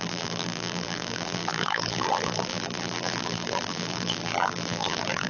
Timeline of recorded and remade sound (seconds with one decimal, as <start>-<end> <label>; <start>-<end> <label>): 0.0-5.3 remade